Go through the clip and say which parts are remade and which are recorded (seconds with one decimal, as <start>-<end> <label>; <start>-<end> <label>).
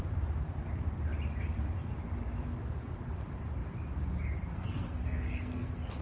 0.0-4.5 recorded; 4.5-6.0 remade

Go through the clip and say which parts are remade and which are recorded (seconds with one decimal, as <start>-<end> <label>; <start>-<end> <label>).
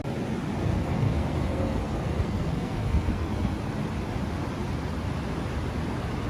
0.0-0.6 recorded; 0.6-3.6 remade; 3.6-6.3 recorded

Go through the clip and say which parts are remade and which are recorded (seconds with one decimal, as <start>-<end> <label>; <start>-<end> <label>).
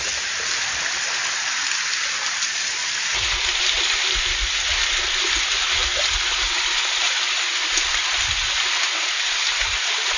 0.0-10.2 recorded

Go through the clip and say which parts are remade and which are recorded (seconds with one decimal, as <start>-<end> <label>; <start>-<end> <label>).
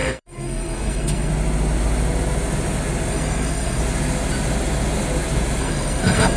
0.0-1.3 remade; 1.3-3.1 recorded; 3.1-3.8 remade; 3.8-5.6 recorded; 5.6-6.4 remade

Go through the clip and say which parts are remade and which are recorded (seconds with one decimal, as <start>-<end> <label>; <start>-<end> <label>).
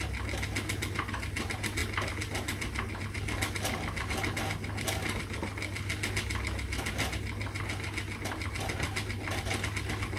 0.0-10.2 recorded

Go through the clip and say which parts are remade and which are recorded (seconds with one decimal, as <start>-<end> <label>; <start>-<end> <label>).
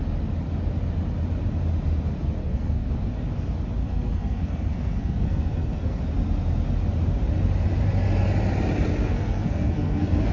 0.0-2.4 recorded; 2.4-2.9 remade; 2.9-3.8 recorded; 3.8-6.0 remade; 6.0-9.0 recorded; 9.0-10.3 remade